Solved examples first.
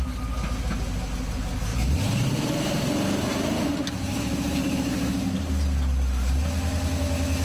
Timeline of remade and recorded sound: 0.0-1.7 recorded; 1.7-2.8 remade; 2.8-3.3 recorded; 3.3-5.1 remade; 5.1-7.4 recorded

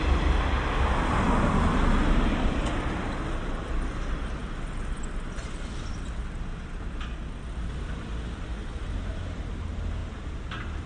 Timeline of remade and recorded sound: 0.0-4.4 recorded; 4.4-5.0 remade; 5.0-10.9 recorded

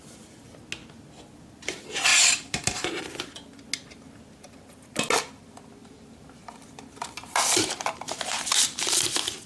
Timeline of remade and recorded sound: 0.0-2.1 recorded; 2.1-3.0 remade; 3.0-5.8 recorded; 5.8-9.0 remade; 9.0-9.5 recorded

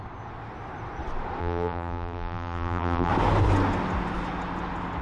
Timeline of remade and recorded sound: 0.0-1.4 recorded; 1.4-3.1 remade; 3.1-5.0 recorded

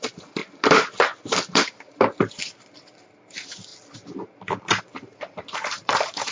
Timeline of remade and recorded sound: 0.0-0.4 remade; 0.4-1.9 recorded; 1.9-3.7 remade; 3.7-4.8 recorded; 4.8-6.3 remade

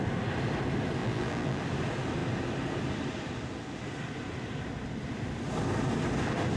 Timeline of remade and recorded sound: 0.0-1.0 recorded; 1.0-1.6 remade; 1.6-6.6 recorded

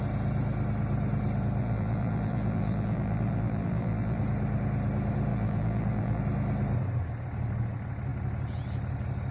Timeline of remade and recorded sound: 0.0-1.6 recorded; 1.6-4.2 remade; 4.2-5.3 recorded; 5.3-6.2 remade; 6.2-9.3 recorded